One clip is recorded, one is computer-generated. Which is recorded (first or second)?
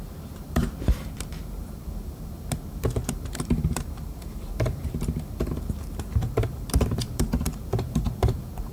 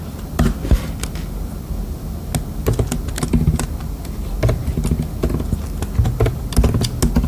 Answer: second